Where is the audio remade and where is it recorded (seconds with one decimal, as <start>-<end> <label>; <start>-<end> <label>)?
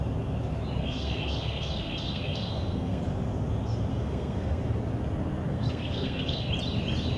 0.0-0.8 recorded; 0.8-3.0 remade; 3.0-3.9 recorded; 3.9-4.6 remade; 4.6-5.5 recorded; 5.5-6.5 remade; 6.5-7.2 recorded